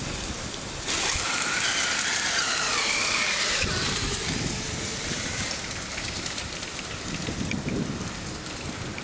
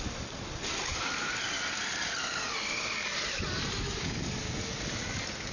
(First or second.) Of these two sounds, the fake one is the first